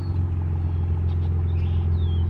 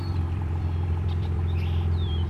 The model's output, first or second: second